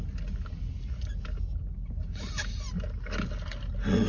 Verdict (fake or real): real